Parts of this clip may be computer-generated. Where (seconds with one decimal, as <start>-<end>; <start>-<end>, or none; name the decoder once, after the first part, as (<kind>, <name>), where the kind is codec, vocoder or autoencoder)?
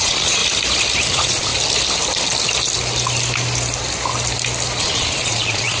0.0-0.4 (vocoder, Vocos); 1.1-1.5; 4.8-5.8